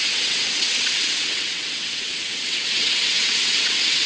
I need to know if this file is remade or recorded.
remade